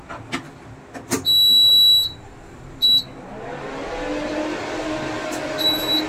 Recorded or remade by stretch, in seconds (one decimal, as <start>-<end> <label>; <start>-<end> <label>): 0.0-6.1 recorded